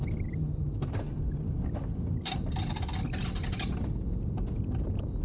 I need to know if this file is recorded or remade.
recorded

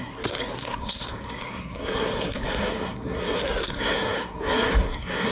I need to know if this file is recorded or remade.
remade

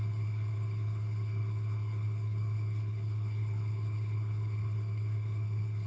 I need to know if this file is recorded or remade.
remade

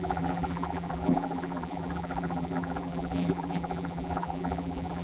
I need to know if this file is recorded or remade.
remade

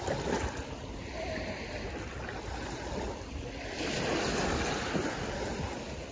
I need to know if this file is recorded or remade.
recorded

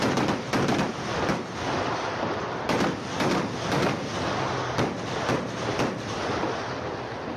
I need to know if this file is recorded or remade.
recorded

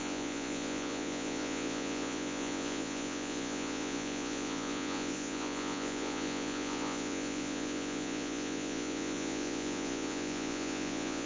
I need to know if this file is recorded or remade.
remade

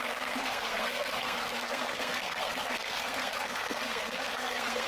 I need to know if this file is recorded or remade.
remade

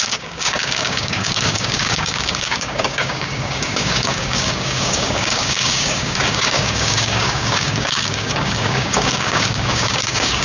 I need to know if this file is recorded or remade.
remade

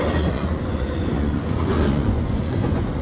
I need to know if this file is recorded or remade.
remade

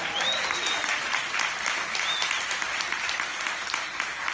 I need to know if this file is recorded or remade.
recorded